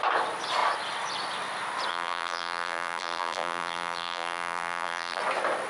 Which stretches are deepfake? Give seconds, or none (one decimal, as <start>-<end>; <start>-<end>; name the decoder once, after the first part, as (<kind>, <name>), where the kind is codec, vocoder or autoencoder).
1.9-5.2 (vocoder, BigVGAN v2)